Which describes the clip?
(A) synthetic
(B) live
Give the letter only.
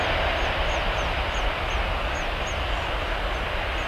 A